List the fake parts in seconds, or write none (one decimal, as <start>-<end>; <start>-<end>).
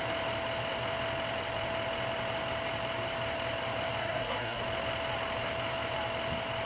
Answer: 4.0-4.6